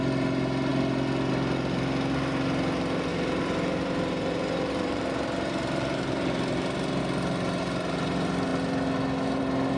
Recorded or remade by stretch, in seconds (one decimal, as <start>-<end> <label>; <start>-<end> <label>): 0.0-3.1 recorded; 3.1-7.0 remade; 7.0-9.8 recorded